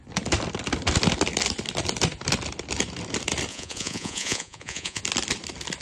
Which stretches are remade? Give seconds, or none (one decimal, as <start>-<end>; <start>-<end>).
3.5-5.0